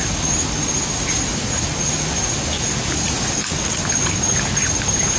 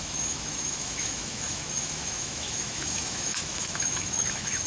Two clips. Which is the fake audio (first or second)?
second